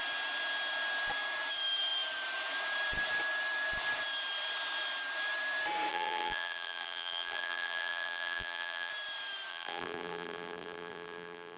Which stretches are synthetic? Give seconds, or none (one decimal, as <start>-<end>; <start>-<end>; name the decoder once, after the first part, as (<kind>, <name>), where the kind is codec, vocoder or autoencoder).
5.9-8.9 (vocoder, BigVGAN v2); 9.5-11.6